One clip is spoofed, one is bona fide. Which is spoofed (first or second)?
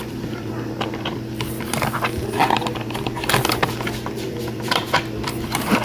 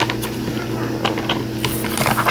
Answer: first